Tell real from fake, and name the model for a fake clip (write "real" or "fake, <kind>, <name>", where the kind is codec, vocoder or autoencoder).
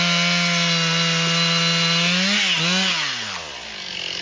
real